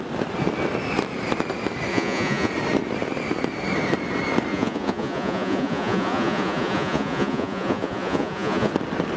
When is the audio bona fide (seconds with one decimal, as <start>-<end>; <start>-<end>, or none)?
0.0-1.9; 2.5-4.5; 8.7-9.2